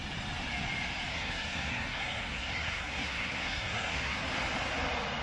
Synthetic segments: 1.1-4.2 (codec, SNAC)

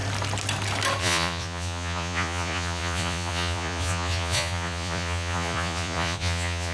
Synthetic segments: 1.0-6.7 (vocoder, Vocos)

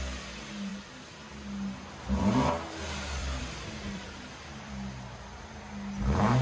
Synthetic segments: 0.7-1.2 (vocoder, BigVGAN v2); 3.2-5.4

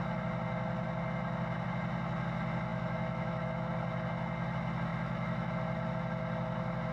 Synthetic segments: 2.7-3.7 (autoencoder, DAC-VAE); 4.9-5.5

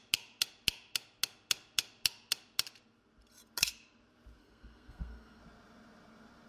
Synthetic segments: 4.4-5.4 (codec, SNAC)

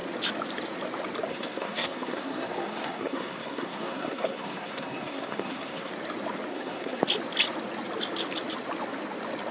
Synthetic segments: 1.3-5.9 (codec, SNAC); 6.5-7.0

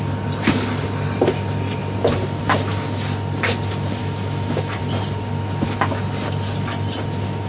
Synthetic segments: 4.0-4.8 (autoencoder, DAC-VAE)